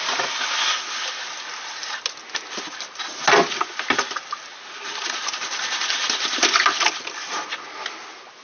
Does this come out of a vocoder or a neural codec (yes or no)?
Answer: no